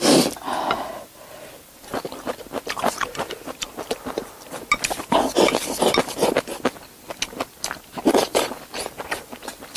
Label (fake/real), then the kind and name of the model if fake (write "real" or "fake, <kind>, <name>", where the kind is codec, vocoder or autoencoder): real